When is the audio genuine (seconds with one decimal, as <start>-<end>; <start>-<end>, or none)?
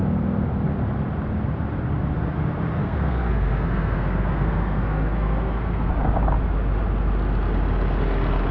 0.0-2.8; 5.9-8.5